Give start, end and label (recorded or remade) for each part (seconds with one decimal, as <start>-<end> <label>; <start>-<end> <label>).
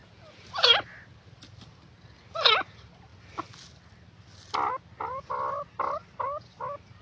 0.0-7.0 recorded